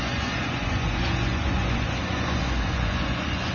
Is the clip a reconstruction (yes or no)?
yes